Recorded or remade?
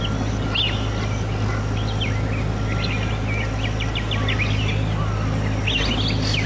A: recorded